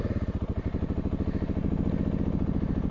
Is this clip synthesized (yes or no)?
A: no